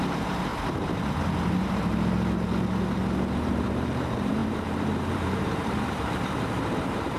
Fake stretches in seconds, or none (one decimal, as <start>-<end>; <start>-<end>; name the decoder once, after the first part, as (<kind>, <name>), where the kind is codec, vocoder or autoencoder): 0.0-0.5 (vocoder, BigVGAN v2); 3.4-7.2